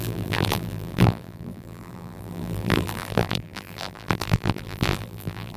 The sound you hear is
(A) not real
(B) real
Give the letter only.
A